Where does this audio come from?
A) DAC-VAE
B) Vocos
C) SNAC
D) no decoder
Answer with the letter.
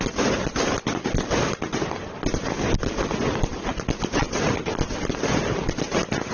D